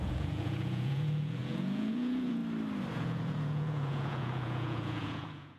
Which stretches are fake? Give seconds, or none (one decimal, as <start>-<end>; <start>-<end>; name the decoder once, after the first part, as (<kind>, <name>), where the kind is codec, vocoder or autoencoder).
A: 0.0-2.4 (vocoder, Vocos); 2.9-5.6